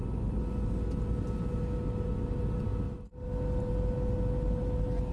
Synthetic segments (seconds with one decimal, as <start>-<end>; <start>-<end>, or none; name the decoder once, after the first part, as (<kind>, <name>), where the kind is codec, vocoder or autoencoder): none